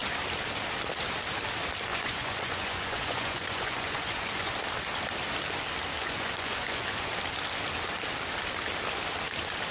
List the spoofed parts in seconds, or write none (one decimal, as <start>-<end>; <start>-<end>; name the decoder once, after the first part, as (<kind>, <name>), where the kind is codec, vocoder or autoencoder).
1.9-4.5 (vocoder, Vocos); 6.0-7.1